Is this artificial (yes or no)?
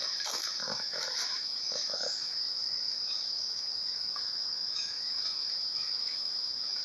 yes